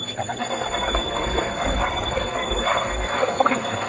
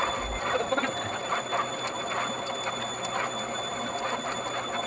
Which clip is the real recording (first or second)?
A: second